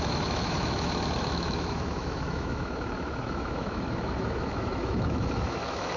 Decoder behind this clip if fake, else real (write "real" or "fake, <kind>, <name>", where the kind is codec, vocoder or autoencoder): fake, autoencoder, DAC-VAE